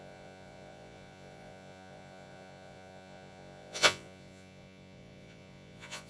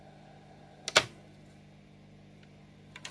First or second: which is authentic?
second